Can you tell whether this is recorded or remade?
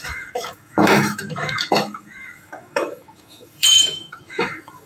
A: remade